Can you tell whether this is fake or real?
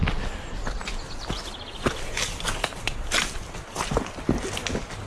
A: real